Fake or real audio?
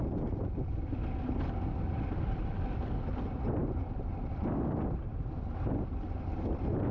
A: real